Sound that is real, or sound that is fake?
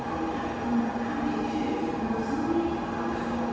real